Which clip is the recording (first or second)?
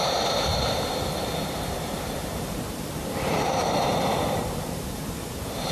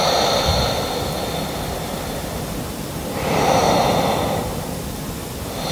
second